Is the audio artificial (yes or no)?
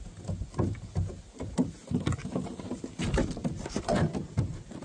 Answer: no